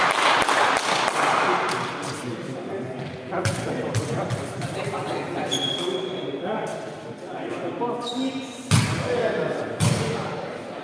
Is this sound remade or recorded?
recorded